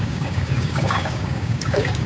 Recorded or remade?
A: remade